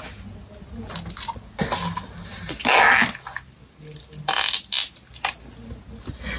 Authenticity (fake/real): real